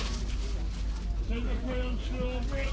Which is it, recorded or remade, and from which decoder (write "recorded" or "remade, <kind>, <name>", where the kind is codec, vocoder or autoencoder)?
recorded